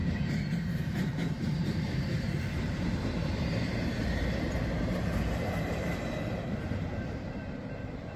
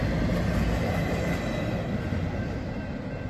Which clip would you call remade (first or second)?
first